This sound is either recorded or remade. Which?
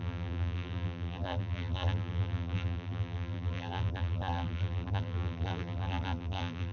remade